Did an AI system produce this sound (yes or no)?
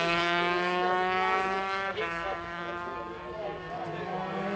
yes